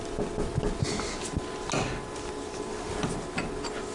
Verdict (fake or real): real